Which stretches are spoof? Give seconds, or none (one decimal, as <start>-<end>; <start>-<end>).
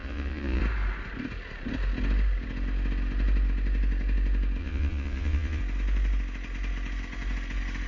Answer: 0.0-0.6; 4.6-5.6